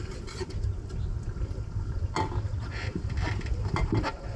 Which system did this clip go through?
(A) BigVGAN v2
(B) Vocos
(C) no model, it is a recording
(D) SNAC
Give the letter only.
C